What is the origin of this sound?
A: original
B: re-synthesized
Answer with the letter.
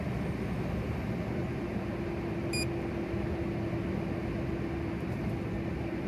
A